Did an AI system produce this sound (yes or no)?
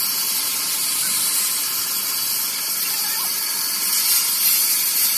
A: no